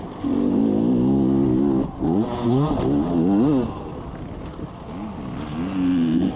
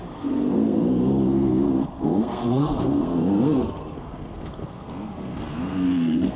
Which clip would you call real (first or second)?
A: first